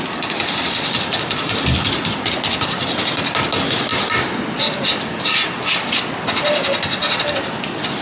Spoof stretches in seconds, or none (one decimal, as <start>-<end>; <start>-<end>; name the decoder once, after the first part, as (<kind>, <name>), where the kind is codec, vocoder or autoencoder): none